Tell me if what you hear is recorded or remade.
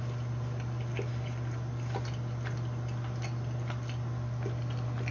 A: recorded